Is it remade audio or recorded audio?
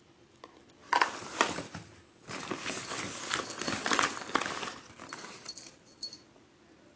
recorded